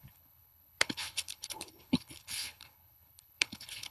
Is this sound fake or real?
fake